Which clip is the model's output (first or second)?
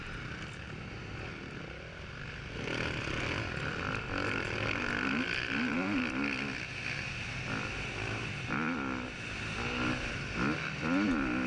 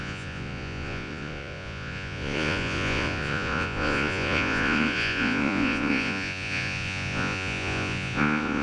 second